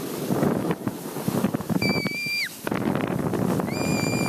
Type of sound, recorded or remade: recorded